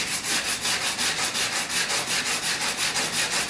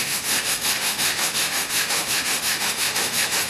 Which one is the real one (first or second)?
first